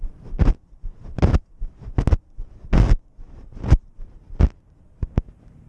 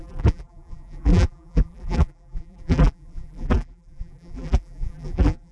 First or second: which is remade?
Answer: second